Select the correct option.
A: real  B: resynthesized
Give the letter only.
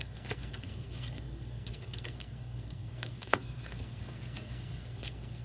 B